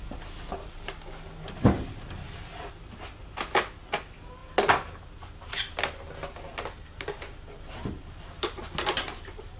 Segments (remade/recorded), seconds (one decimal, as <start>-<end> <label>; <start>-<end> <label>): 0.0-9.6 recorded